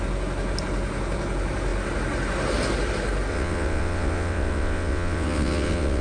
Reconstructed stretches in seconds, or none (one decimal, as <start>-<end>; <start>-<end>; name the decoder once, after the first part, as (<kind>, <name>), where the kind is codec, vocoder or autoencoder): 3.3-6.0 (vocoder, WaveNeXt)